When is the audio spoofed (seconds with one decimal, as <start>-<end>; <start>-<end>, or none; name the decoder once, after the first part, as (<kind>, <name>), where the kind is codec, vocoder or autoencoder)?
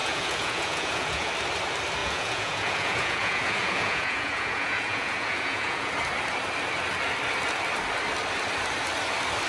0.0-1.3 (vocoder, Vocos); 2.0-5.9